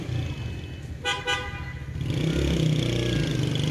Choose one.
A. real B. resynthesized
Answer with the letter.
A